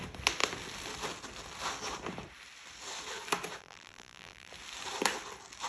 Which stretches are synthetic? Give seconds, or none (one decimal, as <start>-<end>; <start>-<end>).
3.6-4.5